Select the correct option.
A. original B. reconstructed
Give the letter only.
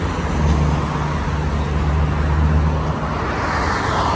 A